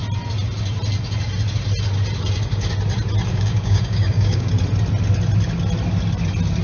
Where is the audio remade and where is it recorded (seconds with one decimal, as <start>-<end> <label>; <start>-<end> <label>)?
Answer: 0.0-3.3 recorded; 3.3-4.5 remade; 4.5-6.6 recorded